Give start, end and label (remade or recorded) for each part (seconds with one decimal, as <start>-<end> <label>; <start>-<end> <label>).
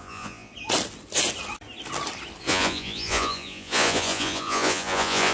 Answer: 0.0-0.5 remade; 0.5-2.4 recorded; 2.4-5.3 remade